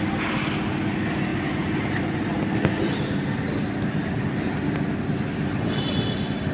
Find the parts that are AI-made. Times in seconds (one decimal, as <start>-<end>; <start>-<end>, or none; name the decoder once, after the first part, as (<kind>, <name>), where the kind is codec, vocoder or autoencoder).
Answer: 1.3-2.0 (vocoder, BigVGAN v2)